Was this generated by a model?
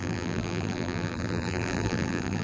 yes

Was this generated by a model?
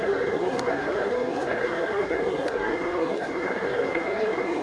yes